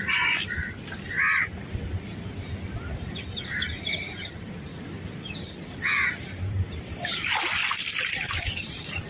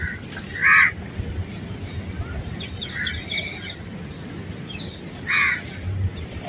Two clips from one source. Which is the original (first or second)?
second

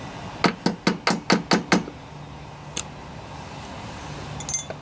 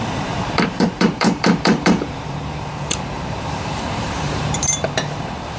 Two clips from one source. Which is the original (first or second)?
first